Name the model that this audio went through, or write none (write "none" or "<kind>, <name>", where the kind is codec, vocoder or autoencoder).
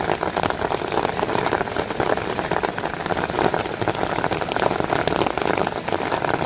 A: none